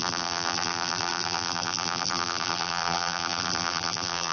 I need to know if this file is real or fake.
fake